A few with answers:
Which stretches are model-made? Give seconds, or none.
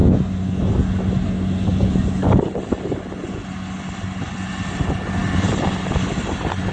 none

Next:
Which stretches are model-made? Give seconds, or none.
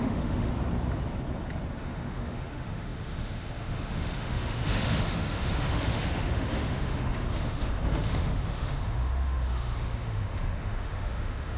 0.0-0.5 (autoencoder, DAC-VAE); 1.8-11.6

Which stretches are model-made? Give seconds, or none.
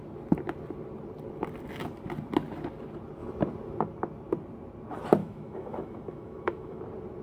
5.2-6.8 (autoencoder, DAC-VAE)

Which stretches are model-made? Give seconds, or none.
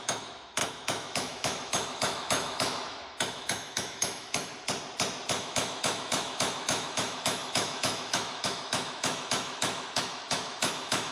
0.0-4.5 (autoencoder, DAC-VAE); 5.4-11.1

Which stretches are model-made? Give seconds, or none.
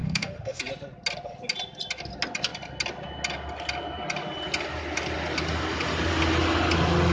0.0-0.6 (autoencoder, DAC-VAE)